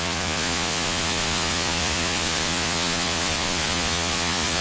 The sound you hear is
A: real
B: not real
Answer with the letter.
B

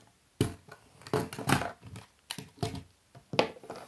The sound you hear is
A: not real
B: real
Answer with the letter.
B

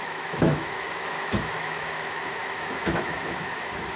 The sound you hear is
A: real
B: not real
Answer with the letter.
B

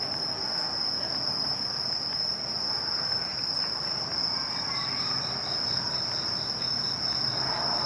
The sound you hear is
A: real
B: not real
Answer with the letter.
A